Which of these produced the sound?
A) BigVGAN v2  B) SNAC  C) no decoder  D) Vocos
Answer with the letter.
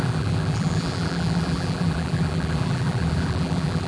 A